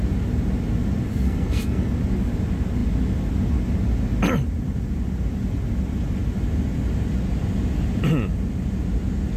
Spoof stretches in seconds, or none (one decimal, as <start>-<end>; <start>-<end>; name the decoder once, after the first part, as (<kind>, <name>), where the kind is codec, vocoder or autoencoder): 1.1-1.9 (codec, SNAC)

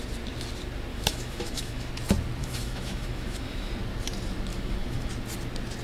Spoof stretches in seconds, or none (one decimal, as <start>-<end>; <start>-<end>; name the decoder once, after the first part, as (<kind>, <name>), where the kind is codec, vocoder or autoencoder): 0.9-1.9 (autoencoder, DAC-VAE); 2.4-3.7; 4.5-5.1